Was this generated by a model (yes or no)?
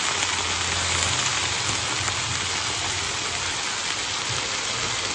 no